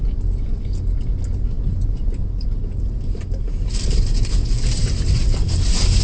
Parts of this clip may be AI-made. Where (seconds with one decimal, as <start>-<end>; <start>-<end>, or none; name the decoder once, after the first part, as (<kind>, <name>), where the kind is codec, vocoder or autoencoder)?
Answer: 1.7-4.3 (vocoder, BigVGAN v2); 4.8-5.6